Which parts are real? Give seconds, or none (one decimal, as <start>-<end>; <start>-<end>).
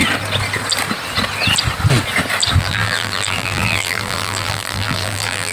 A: 0.0-2.6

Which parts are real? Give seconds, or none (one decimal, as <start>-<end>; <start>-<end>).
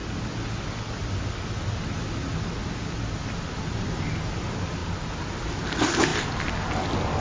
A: 0.0-4.3; 4.8-5.4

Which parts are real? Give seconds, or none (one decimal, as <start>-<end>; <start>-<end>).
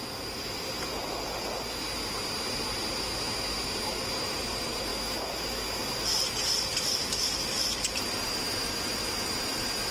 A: 0.0-3.9; 4.9-6.9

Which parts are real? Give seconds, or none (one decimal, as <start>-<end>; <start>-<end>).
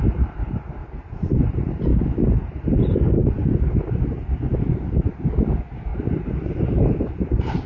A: 0.0-0.8; 1.3-5.9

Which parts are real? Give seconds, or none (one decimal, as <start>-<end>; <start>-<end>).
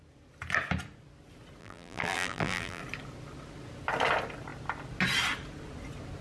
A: 0.0-1.6; 2.8-6.2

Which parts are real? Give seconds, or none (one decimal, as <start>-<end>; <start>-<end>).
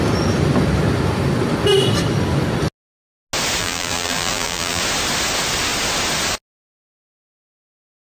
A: 0.0-3.6; 4.8-8.1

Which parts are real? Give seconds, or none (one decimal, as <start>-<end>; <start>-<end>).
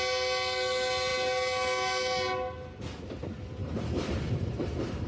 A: 0.0-3.6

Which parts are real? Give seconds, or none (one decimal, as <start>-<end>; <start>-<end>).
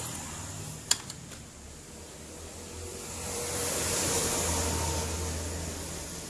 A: 0.0-2.9; 4.2-6.3